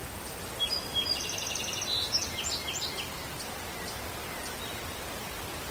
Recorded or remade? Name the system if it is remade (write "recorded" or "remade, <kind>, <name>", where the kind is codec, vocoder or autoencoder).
recorded